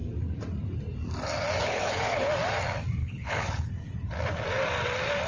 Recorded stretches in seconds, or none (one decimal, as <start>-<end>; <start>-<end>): 0.0-1.6; 2.3-3.0; 3.7-5.3